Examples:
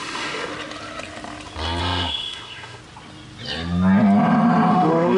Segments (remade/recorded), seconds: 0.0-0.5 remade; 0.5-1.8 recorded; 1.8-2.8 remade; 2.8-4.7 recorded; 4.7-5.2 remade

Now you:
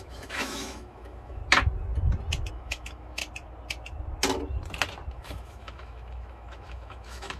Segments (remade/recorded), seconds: 0.0-1.4 remade; 1.4-2.5 recorded; 2.5-3.2 remade; 3.2-5.1 recorded; 5.1-7.4 remade

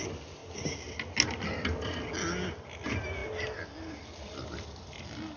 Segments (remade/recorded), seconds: 0.0-5.4 recorded

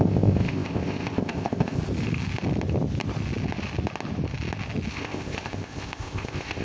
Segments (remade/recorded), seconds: 0.0-1.8 remade; 1.8-4.9 recorded; 4.9-6.6 remade

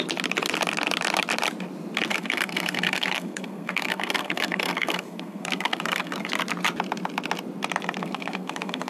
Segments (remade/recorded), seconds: 0.0-2.1 recorded; 2.1-6.3 remade; 6.3-8.0 recorded; 8.0-8.9 remade

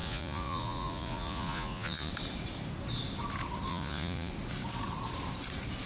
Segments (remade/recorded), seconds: 0.0-2.1 remade; 2.1-3.7 recorded; 3.7-4.3 remade; 4.3-5.9 recorded

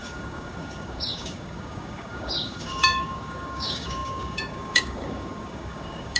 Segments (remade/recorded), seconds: 0.0-6.2 remade

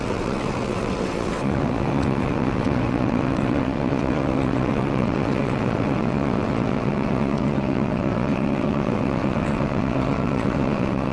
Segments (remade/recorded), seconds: 0.0-11.1 remade